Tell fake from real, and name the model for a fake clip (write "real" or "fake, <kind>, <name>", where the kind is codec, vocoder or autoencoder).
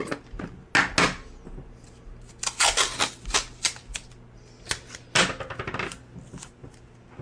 real